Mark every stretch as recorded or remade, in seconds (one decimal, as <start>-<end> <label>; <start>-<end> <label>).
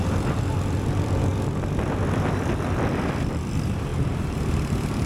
0.0-1.3 remade; 1.3-2.7 recorded; 2.7-5.1 remade